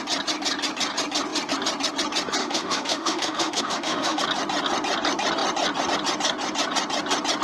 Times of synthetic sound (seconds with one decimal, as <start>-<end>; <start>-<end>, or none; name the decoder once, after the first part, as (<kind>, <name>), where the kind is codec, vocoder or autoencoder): 2.4-4.2 (autoencoder, DAC-VAE)